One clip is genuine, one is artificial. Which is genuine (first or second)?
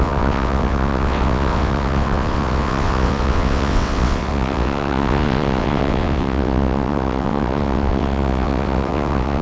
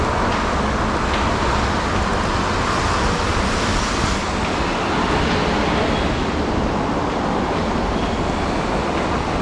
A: second